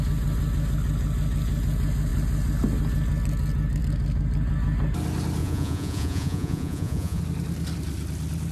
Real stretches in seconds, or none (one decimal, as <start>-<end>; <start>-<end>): 0.0-5.4; 7.2-8.5